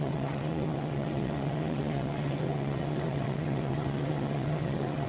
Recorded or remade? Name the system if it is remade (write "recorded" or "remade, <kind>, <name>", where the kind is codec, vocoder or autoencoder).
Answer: remade, vocoder, WaveNeXt